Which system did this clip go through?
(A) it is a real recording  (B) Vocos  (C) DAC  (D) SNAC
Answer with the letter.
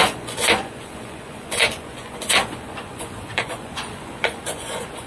B